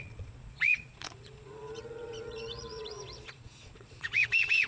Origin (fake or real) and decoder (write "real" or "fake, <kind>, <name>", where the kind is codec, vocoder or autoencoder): fake, vocoder, Vocos